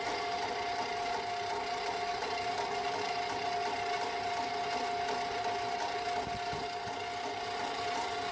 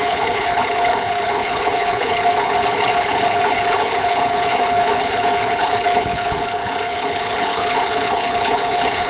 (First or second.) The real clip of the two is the first